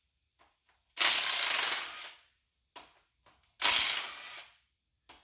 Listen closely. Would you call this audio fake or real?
real